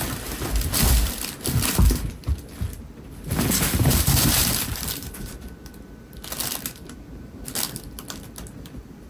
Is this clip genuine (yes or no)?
yes